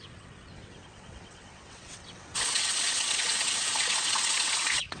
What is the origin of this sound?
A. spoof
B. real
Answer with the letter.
A